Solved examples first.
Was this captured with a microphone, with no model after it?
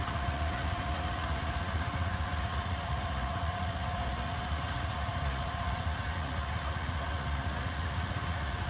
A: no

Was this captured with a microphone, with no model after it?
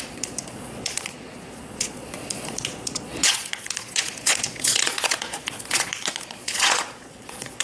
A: no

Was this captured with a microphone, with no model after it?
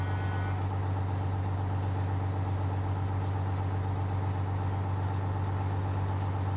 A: yes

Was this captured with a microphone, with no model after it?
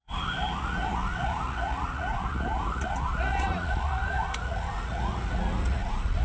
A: no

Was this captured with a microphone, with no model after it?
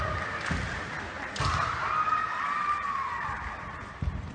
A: yes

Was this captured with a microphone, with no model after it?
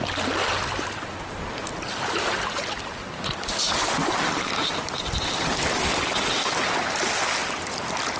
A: yes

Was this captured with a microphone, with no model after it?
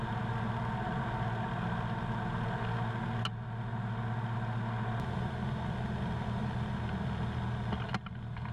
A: yes